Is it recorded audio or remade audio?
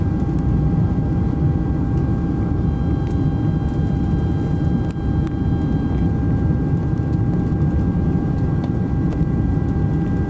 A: recorded